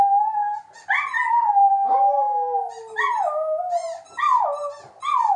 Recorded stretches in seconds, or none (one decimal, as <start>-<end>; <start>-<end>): 0.0-5.4